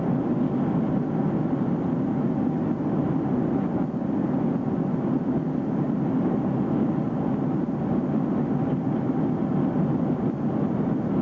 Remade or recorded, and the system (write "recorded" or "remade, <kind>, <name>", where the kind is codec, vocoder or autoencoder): recorded